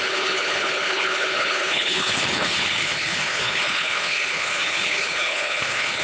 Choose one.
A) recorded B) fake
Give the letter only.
B